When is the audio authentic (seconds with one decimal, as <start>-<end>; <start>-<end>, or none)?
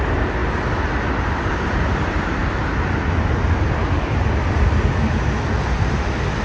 0.0-6.4